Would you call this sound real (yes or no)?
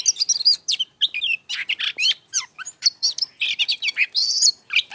no